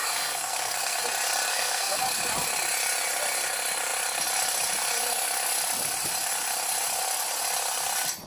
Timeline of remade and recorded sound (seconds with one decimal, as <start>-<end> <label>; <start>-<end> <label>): 0.0-1.0 remade; 1.0-1.5 recorded; 1.5-2.0 remade; 2.0-8.3 recorded